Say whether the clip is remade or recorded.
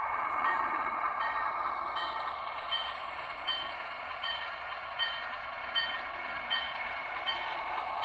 remade